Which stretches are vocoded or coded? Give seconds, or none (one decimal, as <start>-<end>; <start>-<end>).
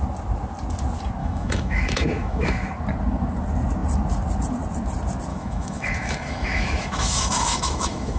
1.2-2.7; 5.3-8.2